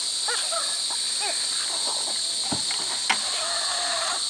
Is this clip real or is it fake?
real